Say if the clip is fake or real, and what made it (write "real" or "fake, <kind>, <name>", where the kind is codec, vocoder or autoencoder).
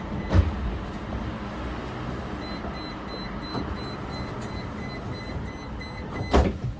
real